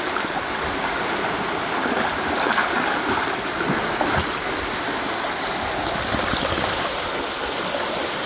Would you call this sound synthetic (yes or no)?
no